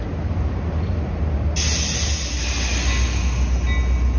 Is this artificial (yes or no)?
no